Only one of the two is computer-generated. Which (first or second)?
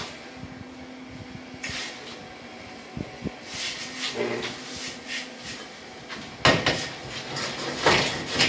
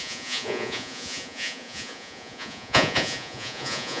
second